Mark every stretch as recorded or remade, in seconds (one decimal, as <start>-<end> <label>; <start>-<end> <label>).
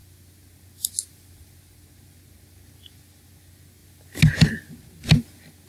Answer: 0.0-5.7 recorded